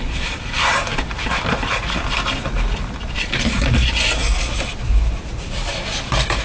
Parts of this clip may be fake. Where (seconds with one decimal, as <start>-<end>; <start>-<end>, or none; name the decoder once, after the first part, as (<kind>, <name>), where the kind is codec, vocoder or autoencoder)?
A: none